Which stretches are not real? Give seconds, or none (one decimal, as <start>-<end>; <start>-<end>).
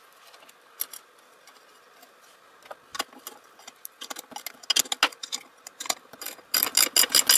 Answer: none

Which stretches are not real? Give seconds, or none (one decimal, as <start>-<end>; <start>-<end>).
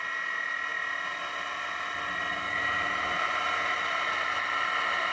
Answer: none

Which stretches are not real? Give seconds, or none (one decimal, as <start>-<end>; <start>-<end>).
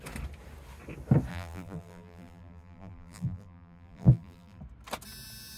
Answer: 1.3-4.6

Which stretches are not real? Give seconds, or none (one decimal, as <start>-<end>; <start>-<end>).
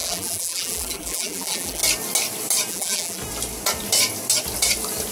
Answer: 0.0-1.8; 2.7-3.2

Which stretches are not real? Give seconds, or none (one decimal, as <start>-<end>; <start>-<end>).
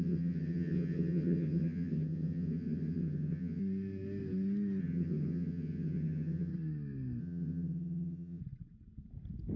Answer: 0.0-3.6; 4.8-6.5; 7.2-8.4